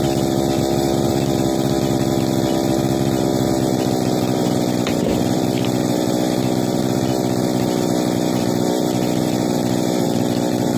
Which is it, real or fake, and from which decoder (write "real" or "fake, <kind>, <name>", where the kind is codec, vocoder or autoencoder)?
fake, vocoder, BigVGAN v2